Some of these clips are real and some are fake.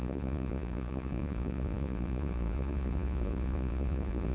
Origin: fake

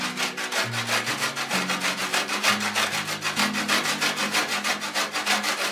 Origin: real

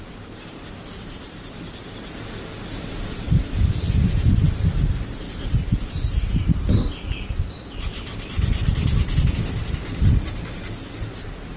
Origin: real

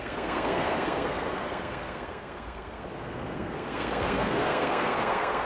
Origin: fake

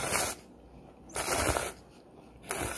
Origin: real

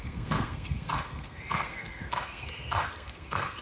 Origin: fake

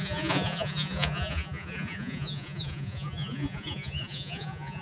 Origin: fake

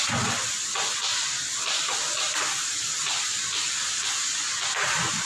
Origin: real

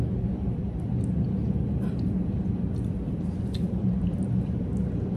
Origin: real